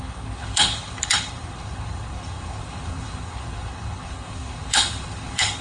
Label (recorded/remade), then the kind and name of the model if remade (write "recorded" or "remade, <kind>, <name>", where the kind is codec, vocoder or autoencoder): remade, codec, HILCodec